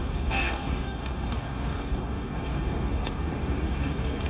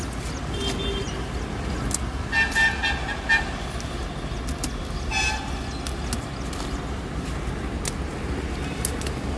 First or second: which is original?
second